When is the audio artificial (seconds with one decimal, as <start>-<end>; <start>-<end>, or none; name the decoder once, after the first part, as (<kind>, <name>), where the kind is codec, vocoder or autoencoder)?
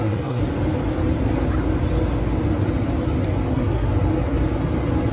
0.0-0.4 (codec, SNAC); 3.5-3.9